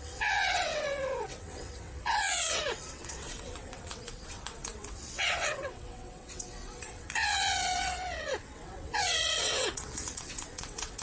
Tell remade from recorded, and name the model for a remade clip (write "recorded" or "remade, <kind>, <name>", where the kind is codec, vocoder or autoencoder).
remade, vocoder, WaveNeXt